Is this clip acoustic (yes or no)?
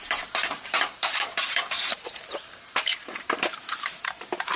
no